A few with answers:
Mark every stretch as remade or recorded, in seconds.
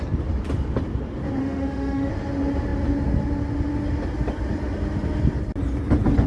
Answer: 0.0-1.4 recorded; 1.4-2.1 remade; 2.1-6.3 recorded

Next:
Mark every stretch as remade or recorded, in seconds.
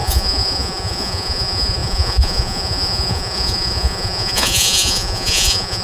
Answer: 0.0-5.8 remade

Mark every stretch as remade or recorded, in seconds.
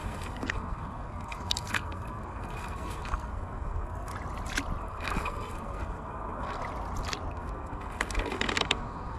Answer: 0.0-4.1 remade; 4.1-4.8 recorded; 4.8-6.6 remade; 6.6-7.3 recorded; 7.3-9.2 remade